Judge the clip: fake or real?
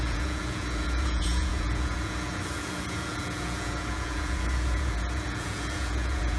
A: fake